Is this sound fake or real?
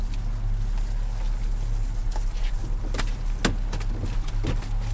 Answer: real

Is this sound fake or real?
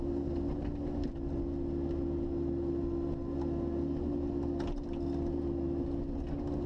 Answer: real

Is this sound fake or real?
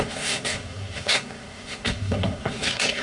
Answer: fake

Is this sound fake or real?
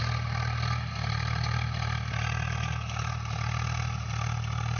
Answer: real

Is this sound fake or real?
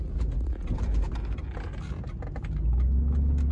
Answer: real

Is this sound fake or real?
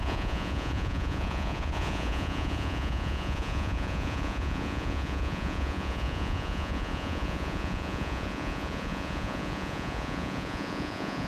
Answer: fake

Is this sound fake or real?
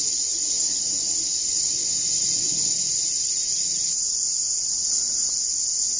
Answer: real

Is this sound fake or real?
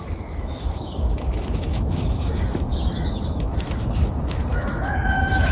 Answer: fake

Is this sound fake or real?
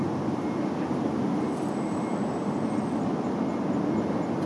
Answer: real